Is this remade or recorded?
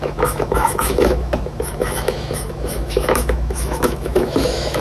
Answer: remade